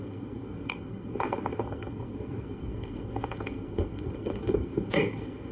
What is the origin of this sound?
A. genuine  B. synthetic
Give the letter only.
B